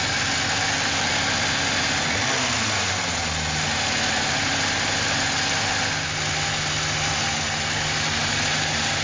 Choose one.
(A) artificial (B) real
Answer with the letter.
B